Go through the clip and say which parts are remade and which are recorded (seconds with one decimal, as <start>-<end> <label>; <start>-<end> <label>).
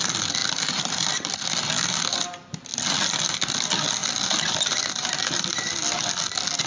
0.0-0.4 recorded; 0.4-1.6 remade; 1.6-2.7 recorded; 2.7-3.3 remade; 3.3-4.0 recorded; 4.0-5.7 remade; 5.7-6.7 recorded